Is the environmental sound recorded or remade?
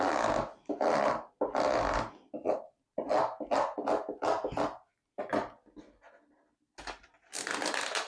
recorded